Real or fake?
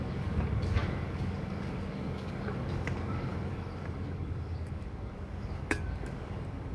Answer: fake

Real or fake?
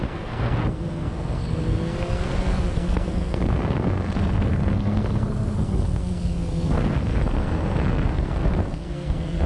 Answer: fake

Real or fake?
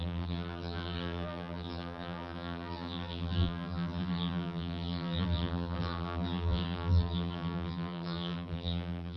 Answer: fake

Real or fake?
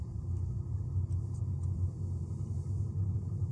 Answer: fake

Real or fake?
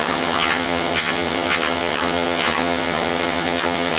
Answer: fake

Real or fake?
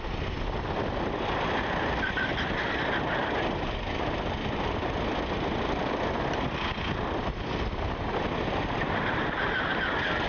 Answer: real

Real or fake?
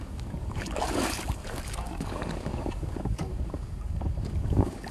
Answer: fake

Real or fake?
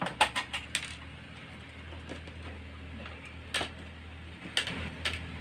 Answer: real